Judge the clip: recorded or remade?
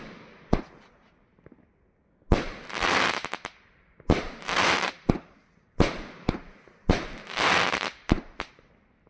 recorded